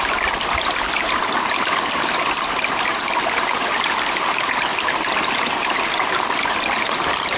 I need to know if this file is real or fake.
real